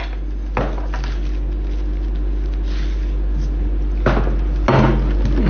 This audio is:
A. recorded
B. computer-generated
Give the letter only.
A